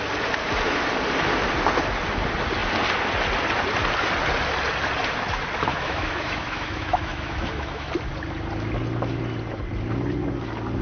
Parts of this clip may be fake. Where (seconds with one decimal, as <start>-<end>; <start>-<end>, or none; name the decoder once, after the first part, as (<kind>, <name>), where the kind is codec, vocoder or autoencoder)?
5.7-7.9 (autoencoder, DAC-VAE)